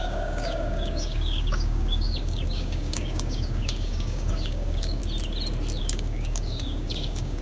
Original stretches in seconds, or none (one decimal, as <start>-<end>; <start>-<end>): 5.0-5.8